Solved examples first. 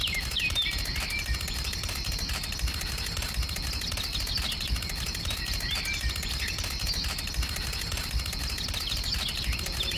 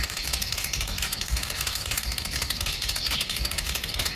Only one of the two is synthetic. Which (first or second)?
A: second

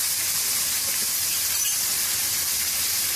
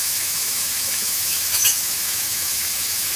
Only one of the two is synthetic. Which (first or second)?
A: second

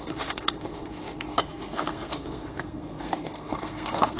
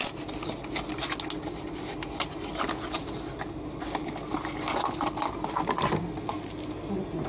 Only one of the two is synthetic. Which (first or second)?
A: first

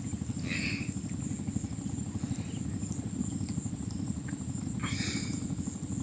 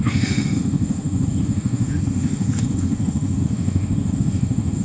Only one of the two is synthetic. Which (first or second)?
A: second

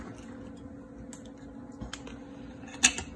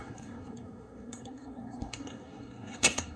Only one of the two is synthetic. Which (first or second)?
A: second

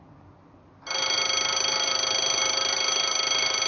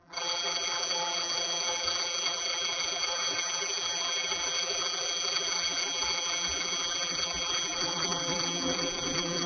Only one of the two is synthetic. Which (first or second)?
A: second